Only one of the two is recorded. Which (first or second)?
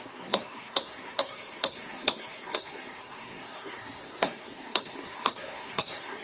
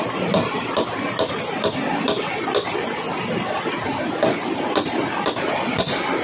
second